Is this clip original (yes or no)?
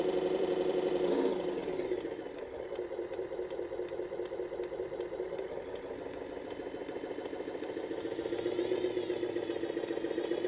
no